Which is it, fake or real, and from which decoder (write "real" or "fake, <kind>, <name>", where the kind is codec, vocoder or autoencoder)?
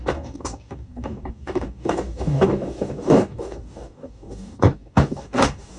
fake, codec, DAC